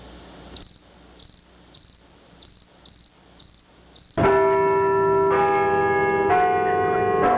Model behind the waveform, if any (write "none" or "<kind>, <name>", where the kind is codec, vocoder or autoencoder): none